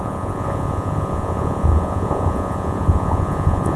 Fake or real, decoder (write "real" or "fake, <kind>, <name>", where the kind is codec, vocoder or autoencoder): fake, vocoder, Vocos